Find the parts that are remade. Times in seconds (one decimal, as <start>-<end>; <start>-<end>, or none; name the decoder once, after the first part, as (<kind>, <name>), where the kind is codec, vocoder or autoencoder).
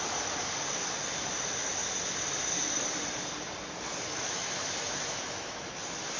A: 4.1-5.7 (autoencoder, DAC-VAE)